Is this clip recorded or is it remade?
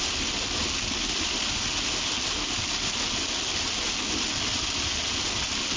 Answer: recorded